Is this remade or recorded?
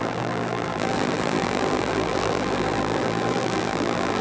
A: remade